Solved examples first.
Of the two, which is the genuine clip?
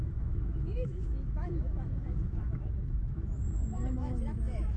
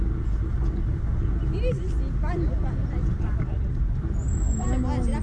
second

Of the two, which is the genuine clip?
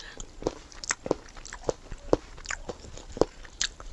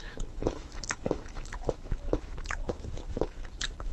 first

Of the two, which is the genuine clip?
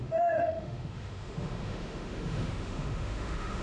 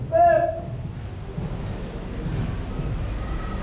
second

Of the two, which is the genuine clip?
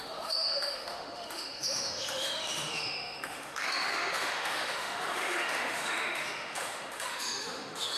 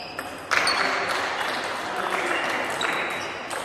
second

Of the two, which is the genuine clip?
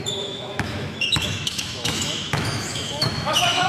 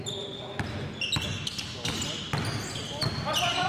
second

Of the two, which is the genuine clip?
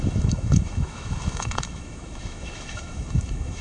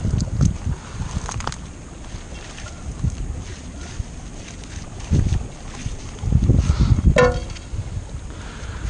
second